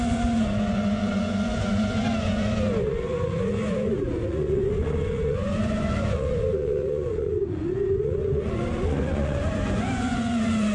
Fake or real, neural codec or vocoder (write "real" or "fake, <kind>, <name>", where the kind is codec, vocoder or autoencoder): fake, vocoder, Vocos